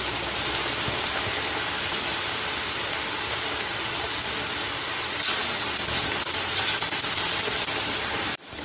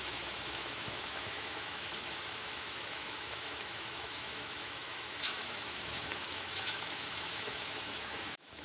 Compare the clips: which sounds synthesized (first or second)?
second